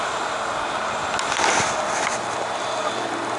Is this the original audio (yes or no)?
yes